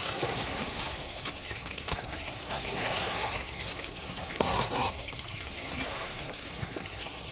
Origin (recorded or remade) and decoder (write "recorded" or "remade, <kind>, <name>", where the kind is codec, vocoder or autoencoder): remade, codec, SNAC